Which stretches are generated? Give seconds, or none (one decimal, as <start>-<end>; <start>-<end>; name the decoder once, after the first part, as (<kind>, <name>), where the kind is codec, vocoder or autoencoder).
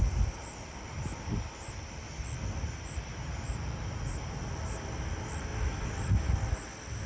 none